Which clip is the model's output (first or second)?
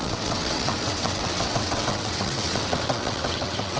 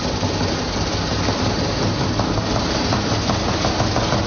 first